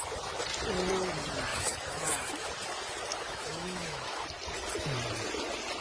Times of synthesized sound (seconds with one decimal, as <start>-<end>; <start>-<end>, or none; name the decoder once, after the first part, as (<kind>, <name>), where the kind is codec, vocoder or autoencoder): 1.5-2.5 (autoencoder, DAC-VAE); 3.1-4.2